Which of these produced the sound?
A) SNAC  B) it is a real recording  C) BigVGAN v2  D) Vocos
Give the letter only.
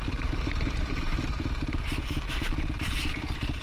C